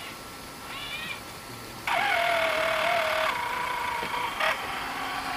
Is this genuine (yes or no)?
no